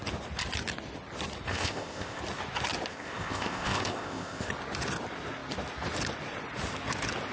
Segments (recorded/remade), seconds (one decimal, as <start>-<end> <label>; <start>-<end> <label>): 0.0-1.5 recorded; 1.5-2.2 remade; 2.2-2.9 recorded; 2.9-4.5 remade; 4.5-7.3 recorded